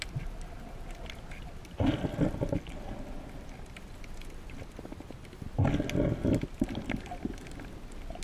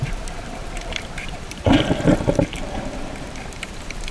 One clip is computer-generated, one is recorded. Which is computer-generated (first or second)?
second